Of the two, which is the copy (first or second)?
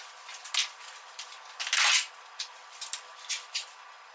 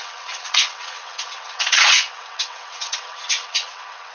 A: second